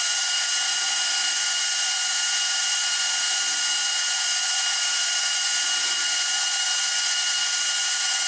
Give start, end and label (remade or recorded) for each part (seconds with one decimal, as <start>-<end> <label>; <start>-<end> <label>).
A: 0.0-8.3 remade